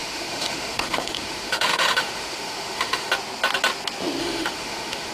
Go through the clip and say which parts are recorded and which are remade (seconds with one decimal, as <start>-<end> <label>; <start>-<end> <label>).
0.0-3.1 remade; 3.1-4.2 recorded; 4.2-5.1 remade